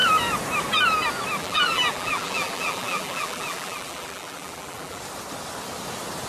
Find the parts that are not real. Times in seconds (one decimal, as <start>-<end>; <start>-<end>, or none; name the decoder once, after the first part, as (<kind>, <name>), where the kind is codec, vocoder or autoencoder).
1.4-5.0 (vocoder, BigVGAN v2)